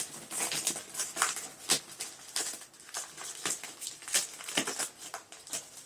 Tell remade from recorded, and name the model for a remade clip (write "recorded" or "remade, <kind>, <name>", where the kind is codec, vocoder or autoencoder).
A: recorded